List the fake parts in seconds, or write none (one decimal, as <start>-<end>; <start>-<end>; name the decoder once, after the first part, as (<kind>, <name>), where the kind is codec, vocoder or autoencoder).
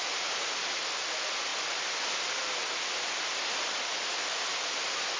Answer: none